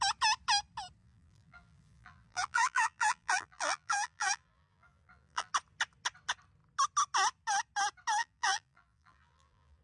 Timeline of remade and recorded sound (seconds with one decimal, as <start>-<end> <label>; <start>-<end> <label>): 0.0-1.0 recorded; 1.0-5.5 remade; 5.5-8.2 recorded; 8.2-9.8 remade